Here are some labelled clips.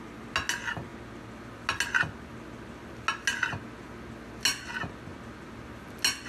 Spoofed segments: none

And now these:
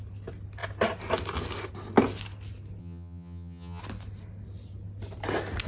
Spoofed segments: 2.8-3.8 (vocoder, HiFi-GAN)

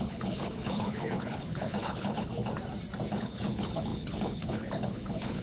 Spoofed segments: 0.0-2.5 (codec, HILCodec); 3.1-5.4

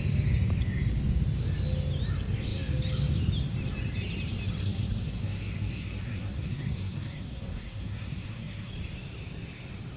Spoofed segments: 4.6-8.7 (codec, SNAC)